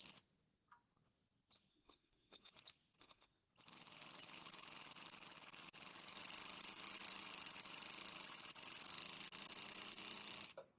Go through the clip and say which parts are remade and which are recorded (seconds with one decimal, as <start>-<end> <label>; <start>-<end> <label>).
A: 0.0-1.7 recorded; 1.7-2.5 remade; 2.5-3.0 recorded; 3.0-3.5 remade; 3.5-10.8 recorded